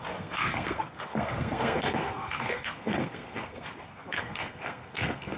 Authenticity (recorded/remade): remade